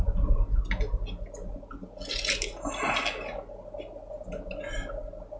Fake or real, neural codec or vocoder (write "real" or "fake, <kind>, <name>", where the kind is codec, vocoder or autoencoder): real